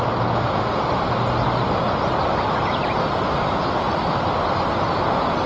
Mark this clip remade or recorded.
recorded